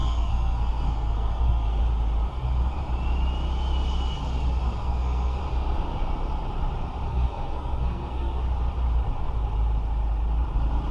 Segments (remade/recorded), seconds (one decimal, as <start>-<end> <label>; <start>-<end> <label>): 0.0-1.8 remade; 1.8-4.8 recorded; 4.8-5.4 remade; 5.4-7.1 recorded; 7.1-8.4 remade; 8.4-10.9 recorded